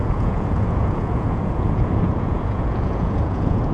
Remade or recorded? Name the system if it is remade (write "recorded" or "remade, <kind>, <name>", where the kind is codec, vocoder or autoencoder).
remade, vocoder, Vocos